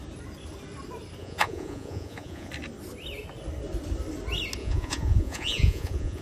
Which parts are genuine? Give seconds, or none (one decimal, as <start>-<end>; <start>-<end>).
0.0-1.2; 2.5-4.6